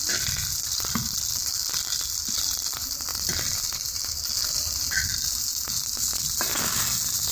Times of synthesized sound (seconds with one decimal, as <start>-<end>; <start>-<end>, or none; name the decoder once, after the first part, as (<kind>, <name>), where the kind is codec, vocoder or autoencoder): none